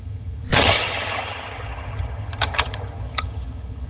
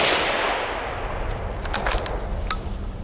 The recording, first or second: second